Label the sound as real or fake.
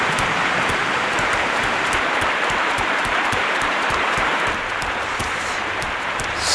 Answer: fake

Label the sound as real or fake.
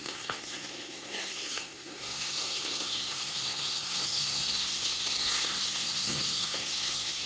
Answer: fake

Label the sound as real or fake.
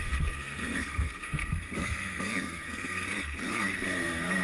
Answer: fake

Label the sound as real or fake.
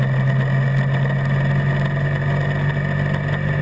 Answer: real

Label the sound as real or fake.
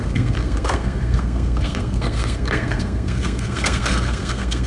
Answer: fake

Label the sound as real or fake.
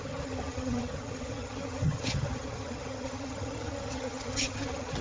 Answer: fake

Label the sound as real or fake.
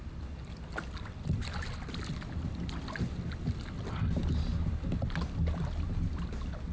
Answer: real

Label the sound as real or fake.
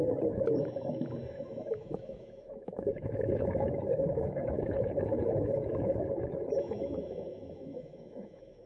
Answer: fake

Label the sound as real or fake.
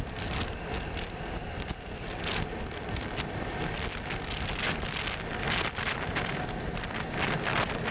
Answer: real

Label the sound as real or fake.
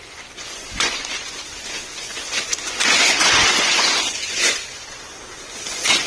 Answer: fake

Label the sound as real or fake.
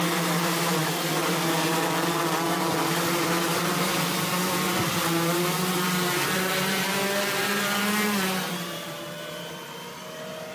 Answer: fake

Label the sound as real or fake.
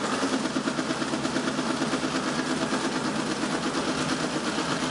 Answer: real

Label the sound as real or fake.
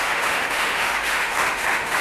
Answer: fake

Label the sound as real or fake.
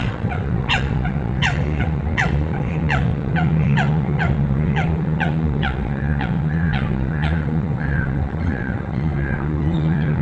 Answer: fake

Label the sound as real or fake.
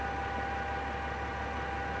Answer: real